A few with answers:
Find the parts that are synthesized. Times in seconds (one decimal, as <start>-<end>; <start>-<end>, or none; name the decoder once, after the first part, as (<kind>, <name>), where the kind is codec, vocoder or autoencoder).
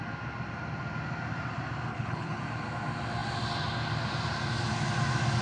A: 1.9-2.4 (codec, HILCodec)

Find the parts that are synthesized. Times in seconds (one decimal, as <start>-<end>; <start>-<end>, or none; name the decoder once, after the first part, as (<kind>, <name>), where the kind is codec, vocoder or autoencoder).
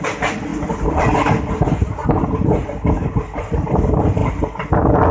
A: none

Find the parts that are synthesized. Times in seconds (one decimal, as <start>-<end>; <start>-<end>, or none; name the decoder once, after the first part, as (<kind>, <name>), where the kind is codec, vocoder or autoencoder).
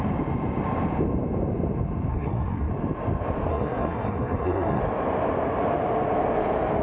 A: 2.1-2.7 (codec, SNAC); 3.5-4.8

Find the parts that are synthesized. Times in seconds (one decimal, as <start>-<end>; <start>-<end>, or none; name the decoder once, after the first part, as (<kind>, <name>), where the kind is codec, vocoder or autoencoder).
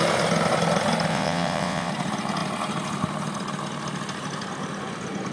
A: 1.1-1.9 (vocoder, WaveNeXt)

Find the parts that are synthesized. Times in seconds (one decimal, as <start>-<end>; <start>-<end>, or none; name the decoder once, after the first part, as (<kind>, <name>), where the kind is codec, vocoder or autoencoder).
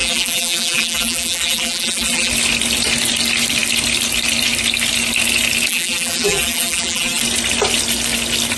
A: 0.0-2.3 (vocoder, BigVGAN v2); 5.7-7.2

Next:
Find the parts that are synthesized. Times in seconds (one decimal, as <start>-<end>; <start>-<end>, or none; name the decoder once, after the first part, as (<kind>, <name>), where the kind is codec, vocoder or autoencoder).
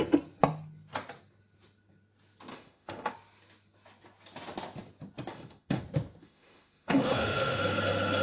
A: 2.5-3.1 (autoencoder, DAC-VAE); 5.3-5.8; 6.2-7.6